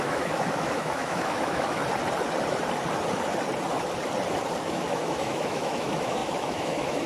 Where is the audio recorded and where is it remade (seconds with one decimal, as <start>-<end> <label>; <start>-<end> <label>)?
0.0-1.8 remade; 1.8-4.6 recorded; 4.6-7.1 remade